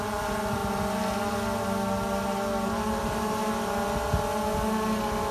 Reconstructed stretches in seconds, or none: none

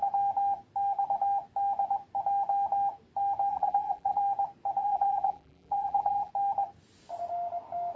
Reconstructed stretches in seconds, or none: 3.5-4.2 (vocoder, BigVGAN v2); 4.8-6.3

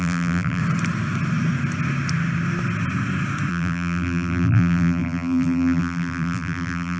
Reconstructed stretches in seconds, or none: 0.0-0.6 (vocoder, BigVGAN v2); 3.5-7.0